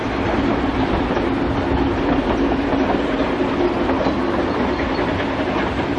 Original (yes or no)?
yes